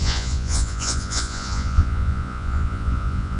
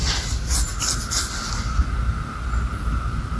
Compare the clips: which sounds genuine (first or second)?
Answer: second